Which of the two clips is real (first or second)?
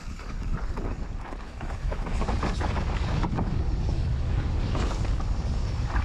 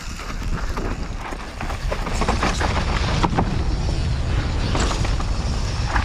second